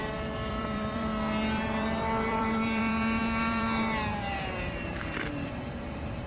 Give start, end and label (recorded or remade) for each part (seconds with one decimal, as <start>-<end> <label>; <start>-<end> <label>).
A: 0.0-6.3 remade